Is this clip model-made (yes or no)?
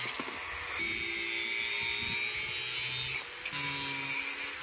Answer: no